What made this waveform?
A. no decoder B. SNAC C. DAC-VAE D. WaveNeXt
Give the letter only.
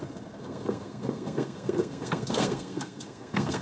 B